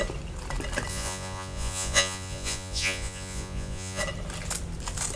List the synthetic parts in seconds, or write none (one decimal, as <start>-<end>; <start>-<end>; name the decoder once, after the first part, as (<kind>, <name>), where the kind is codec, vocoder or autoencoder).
0.9-4.0 (vocoder, Vocos)